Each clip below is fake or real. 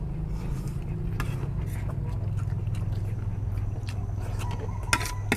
real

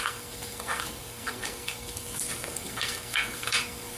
fake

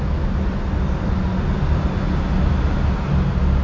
real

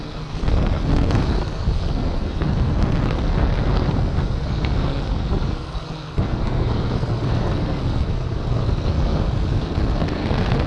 fake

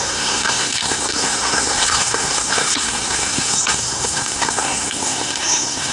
fake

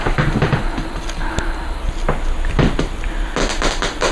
real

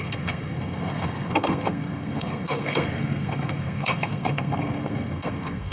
fake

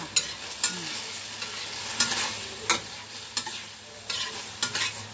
real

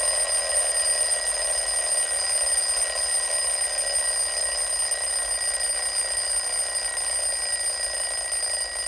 real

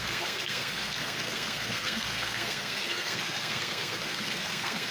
fake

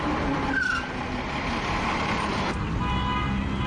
real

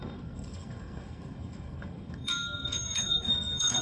fake